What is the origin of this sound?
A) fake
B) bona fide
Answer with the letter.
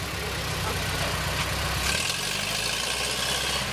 B